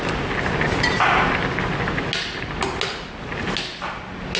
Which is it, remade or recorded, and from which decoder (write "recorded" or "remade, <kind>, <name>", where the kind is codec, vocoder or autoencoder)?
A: recorded